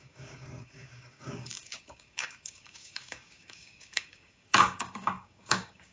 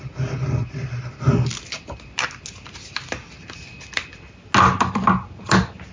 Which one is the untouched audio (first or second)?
second